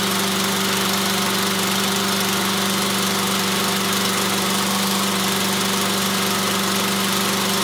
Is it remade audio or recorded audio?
recorded